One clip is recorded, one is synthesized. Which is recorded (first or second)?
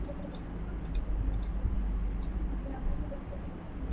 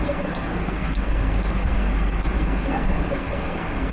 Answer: first